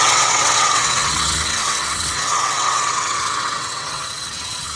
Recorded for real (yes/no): no